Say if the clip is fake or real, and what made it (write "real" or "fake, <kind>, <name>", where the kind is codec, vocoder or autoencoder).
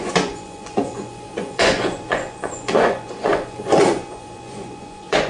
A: fake, vocoder, Vocos